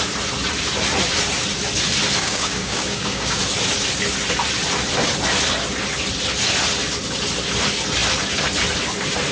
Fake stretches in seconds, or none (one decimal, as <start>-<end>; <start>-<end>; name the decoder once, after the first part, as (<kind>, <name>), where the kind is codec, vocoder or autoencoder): 2.2-3.4 (codec, DAC)